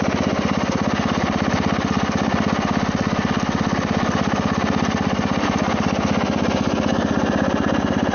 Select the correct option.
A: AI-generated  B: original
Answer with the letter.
B